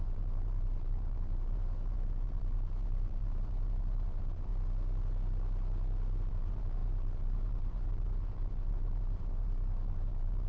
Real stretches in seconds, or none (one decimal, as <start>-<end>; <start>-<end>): 4.5-6.3

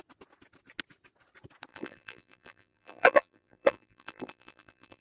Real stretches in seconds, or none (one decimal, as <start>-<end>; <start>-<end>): 0.0-1.7